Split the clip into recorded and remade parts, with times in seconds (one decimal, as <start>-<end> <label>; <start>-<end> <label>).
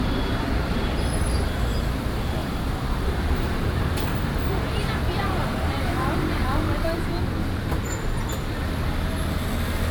0.0-2.4 recorded; 2.4-7.3 remade; 7.3-9.9 recorded